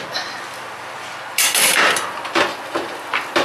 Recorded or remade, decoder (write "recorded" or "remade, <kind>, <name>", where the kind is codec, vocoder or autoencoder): remade, vocoder, BigVGAN v2